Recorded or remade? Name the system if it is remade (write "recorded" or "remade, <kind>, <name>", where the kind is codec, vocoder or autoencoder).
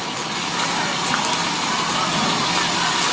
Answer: recorded